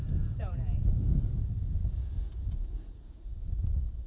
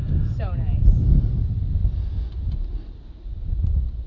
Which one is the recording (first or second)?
second